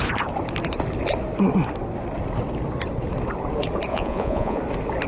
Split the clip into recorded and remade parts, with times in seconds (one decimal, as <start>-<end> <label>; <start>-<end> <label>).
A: 0.0-3.9 recorded; 3.9-4.6 remade; 4.6-5.1 recorded